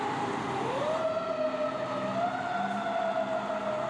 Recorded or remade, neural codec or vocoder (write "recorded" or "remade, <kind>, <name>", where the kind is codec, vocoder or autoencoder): recorded